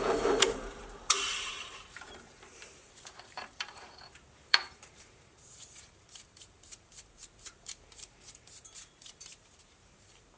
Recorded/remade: remade